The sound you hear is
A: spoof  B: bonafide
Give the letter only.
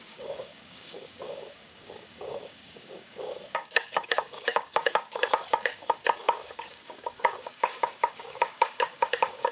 A